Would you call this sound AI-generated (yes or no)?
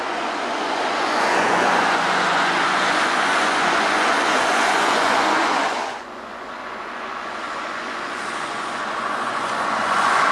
yes